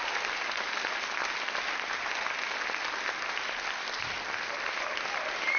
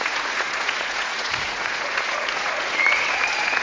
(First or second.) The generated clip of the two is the second